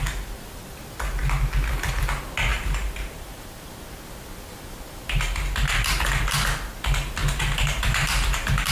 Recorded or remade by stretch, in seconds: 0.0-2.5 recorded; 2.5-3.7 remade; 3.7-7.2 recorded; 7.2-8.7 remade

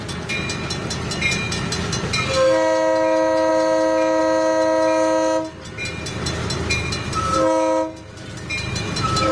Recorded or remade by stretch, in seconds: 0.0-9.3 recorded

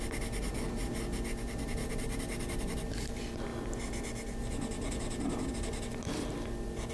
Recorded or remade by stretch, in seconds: 0.0-0.8 remade; 0.8-1.9 recorded; 1.9-3.5 remade; 3.5-5.5 recorded; 5.5-6.9 remade

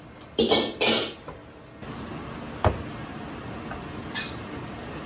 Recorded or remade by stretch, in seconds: 0.0-5.1 recorded

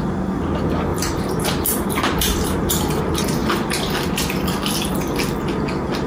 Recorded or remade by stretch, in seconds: 0.0-0.9 recorded; 0.9-3.0 remade; 3.0-3.4 recorded; 3.4-4.9 remade; 4.9-6.1 recorded

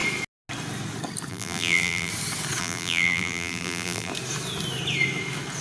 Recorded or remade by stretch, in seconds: 0.0-1.3 recorded; 1.3-2.1 remade; 2.1-2.6 recorded; 2.6-4.1 remade; 4.1-5.6 recorded

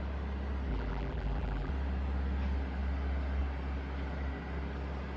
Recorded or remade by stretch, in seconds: 0.0-0.7 recorded; 0.7-1.7 remade; 1.7-5.2 recorded